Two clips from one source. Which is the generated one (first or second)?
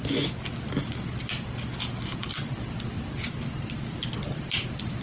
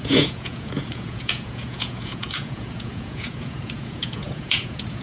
second